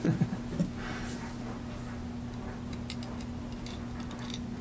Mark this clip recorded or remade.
recorded